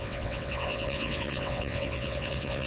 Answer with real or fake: fake